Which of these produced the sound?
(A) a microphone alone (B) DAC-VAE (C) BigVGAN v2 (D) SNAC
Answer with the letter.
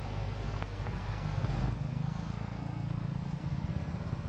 D